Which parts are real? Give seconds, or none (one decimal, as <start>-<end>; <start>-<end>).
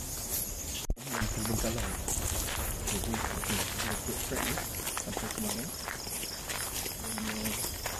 0.0-4.6; 7.6-8.0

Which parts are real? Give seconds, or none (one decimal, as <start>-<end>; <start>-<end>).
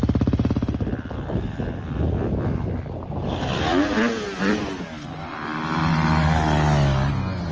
0.0-7.5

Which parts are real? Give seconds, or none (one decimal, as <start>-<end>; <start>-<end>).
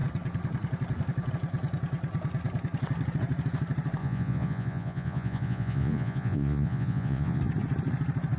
0.0-4.0; 7.4-8.4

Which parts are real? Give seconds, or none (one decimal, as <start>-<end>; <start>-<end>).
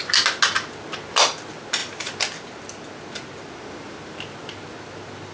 0.0-5.3